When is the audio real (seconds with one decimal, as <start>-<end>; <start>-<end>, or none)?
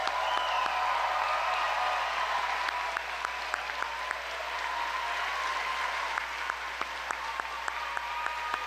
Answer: 0.0-8.7